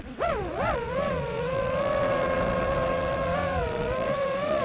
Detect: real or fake fake